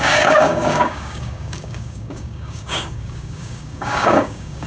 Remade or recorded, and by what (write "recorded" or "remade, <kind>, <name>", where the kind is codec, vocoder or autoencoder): remade, codec, DAC